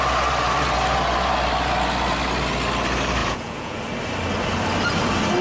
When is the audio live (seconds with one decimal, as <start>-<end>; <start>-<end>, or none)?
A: 0.0-3.2; 3.8-5.4